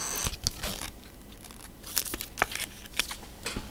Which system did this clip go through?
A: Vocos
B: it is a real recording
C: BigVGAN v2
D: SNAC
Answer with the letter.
B